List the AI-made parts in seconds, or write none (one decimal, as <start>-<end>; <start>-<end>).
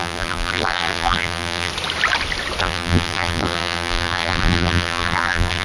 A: 0.0-1.7; 2.6-5.6